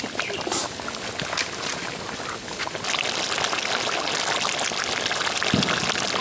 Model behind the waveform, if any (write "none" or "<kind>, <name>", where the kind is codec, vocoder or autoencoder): none